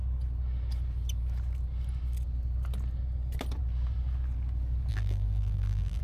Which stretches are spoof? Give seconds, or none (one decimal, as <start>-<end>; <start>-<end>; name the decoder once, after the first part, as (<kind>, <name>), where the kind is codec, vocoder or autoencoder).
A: 4.9-6.0 (vocoder, BigVGAN v2)